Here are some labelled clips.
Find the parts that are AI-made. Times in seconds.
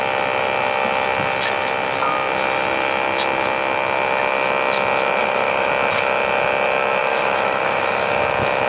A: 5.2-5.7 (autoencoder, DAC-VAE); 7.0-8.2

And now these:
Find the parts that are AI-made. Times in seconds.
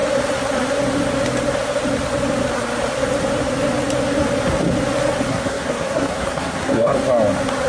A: 5.3-6.9 (codec, SNAC)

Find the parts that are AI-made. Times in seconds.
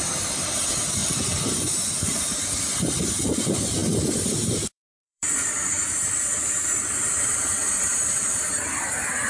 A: 0.0-9.3 (vocoder, BigVGAN v2)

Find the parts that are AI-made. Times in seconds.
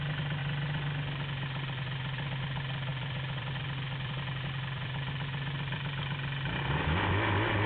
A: 2.9-5.0 (vocoder, BigVGAN v2)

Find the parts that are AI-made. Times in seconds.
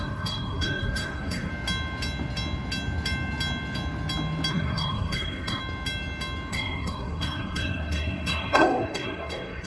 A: 0.0-1.5 (codec, SNAC); 4.5-5.6; 6.5-9.7